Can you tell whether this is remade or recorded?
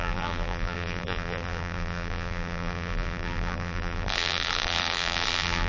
remade